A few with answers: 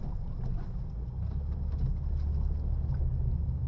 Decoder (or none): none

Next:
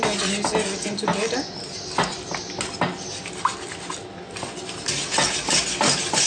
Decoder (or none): none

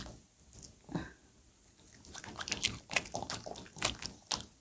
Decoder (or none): none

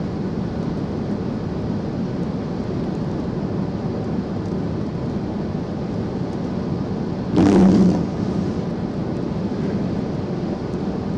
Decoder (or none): none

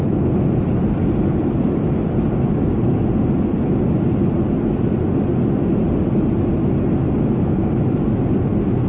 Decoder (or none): none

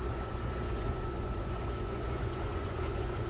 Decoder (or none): vocoder, Vocos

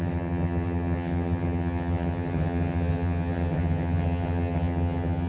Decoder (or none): vocoder, HiFi-GAN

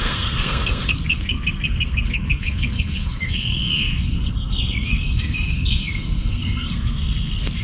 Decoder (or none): codec, SNAC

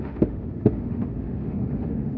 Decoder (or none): autoencoder, DAC-VAE